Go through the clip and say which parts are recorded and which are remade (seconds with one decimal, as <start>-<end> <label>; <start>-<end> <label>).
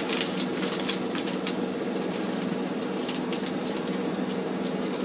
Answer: 0.0-5.0 recorded